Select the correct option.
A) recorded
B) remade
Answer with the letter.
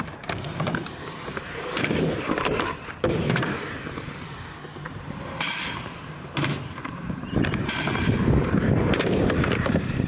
B